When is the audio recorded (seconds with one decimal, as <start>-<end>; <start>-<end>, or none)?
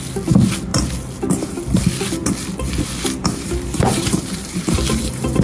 0.0-3.2